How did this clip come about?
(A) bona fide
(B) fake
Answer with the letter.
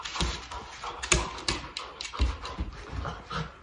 A